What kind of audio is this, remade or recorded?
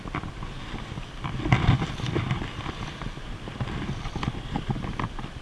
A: recorded